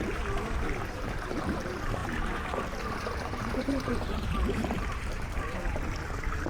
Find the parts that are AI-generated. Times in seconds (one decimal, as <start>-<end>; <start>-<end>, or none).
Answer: 0.0-6.5